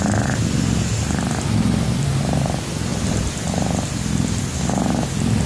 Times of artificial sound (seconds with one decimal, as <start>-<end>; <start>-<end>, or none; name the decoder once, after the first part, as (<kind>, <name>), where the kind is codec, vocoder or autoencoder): none